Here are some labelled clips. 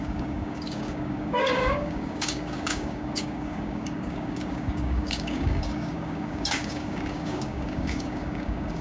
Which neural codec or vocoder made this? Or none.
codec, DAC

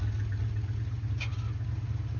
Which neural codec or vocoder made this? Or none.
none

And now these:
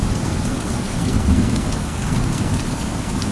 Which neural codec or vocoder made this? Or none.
codec, SNAC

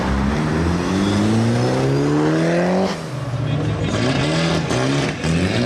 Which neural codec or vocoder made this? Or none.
none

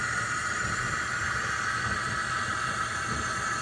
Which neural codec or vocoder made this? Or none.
none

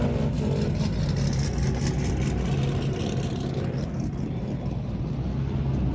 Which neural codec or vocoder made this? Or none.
none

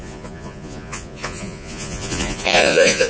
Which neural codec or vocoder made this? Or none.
vocoder, Vocos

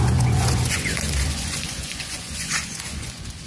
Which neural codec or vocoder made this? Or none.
vocoder, Vocos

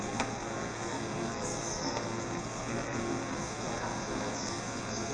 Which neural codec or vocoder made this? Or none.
codec, SNAC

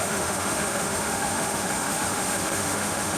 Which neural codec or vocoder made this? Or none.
autoencoder, DAC-VAE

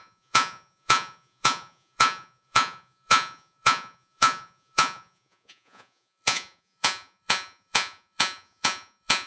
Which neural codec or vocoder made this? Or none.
vocoder, Vocos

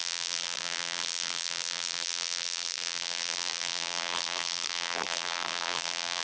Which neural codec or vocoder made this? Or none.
vocoder, BigVGAN v2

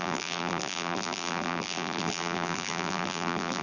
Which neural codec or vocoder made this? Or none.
vocoder, BigVGAN v2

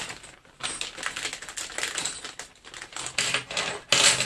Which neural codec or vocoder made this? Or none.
none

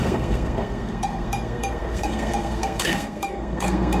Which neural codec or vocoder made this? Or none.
codec, SNAC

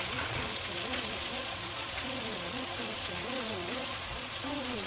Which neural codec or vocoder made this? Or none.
vocoder, Vocos